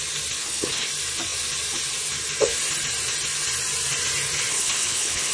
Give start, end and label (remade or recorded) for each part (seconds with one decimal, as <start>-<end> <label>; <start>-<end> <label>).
0.0-0.4 recorded; 0.4-0.9 remade; 0.9-4.5 recorded; 4.5-5.3 remade